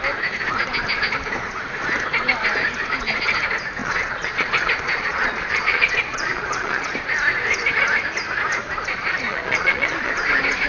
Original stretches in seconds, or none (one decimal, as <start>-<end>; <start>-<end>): 0.0-3.8; 6.9-9.3; 10.1-10.7